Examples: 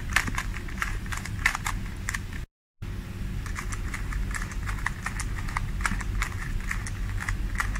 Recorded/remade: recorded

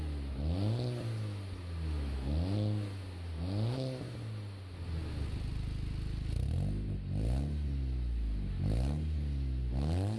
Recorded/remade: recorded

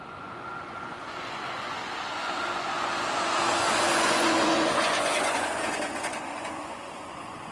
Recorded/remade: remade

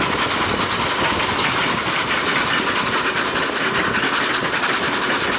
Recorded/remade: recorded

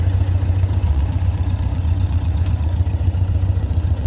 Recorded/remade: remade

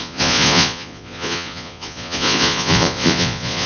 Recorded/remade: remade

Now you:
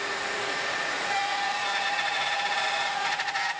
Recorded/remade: remade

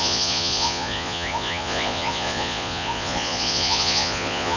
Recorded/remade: remade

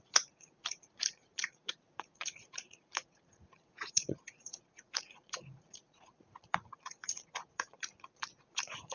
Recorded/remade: remade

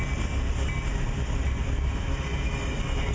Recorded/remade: recorded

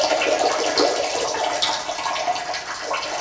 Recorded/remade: recorded